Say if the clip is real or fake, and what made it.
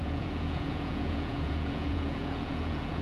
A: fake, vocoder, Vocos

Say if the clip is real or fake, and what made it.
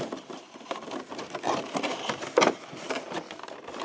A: real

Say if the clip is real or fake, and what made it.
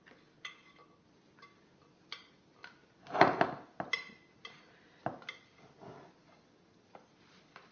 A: real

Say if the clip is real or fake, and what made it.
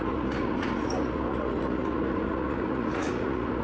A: fake, vocoder, Vocos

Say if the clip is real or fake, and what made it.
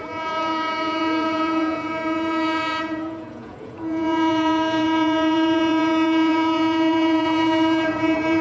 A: fake, vocoder, Vocos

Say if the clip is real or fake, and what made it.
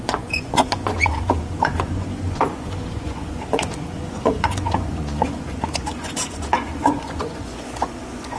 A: fake, vocoder, Vocos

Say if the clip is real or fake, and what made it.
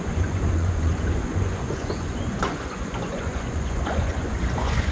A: fake, vocoder, Vocos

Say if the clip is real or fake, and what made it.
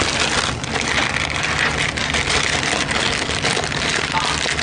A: real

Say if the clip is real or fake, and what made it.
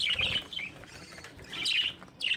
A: real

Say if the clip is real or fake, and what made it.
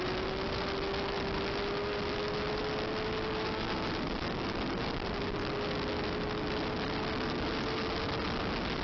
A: real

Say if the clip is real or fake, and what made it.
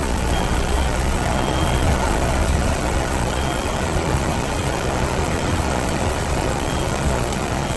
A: fake, vocoder, Vocos